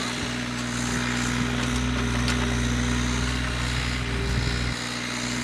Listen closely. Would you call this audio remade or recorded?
recorded